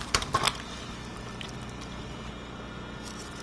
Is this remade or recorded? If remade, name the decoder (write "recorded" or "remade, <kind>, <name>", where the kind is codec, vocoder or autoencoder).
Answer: recorded